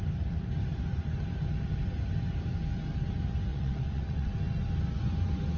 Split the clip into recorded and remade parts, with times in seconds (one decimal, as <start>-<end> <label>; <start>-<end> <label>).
0.0-3.5 recorded; 3.5-4.3 remade; 4.3-5.6 recorded